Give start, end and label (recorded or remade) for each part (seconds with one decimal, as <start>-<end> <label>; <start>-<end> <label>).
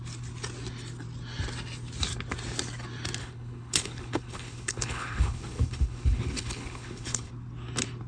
0.0-3.2 recorded; 3.2-7.3 remade; 7.3-8.1 recorded